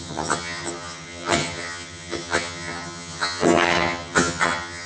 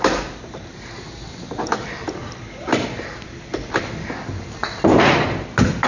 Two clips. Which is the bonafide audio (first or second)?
second